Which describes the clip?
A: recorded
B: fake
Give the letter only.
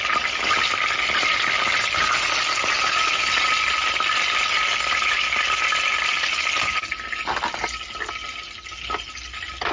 A